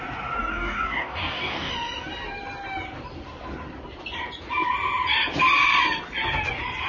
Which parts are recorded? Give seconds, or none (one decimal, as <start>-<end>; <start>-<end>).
0.0-0.5; 1.7-6.9